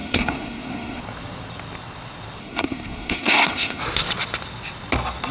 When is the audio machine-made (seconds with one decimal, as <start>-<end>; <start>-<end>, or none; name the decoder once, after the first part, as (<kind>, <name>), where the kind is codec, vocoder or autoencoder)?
0.0-1.0 (codec, SNAC); 2.4-3.8